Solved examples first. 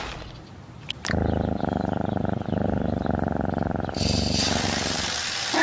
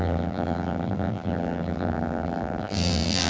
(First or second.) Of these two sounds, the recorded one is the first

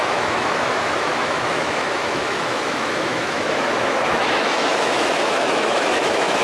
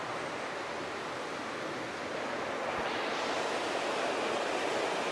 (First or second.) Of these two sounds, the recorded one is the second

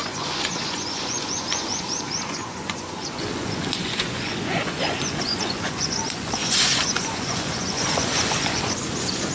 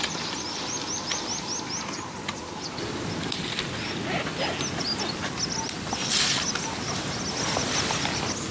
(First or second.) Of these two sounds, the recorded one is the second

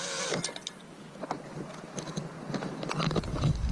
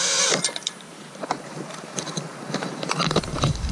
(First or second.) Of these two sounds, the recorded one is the first